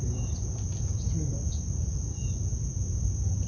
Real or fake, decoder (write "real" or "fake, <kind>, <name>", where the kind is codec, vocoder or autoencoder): real